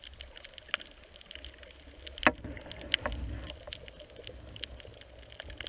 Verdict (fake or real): real